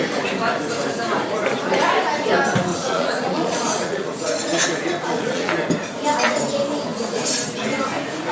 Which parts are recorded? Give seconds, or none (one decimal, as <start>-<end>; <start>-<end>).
0.0-2.7; 5.5-8.3